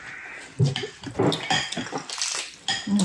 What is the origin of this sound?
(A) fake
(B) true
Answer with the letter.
B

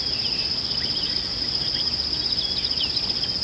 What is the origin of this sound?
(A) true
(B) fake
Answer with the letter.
A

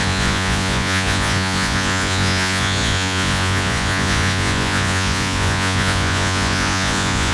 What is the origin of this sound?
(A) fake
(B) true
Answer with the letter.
A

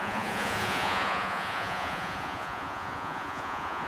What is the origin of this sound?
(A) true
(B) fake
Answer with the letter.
B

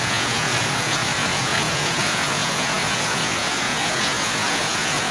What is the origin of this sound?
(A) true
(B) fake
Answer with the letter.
B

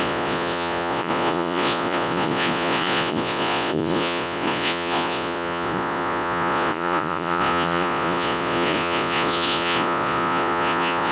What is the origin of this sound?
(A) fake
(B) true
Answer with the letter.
A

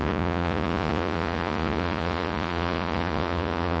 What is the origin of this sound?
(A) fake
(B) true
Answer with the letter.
A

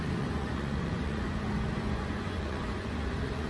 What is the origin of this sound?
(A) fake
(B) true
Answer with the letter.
A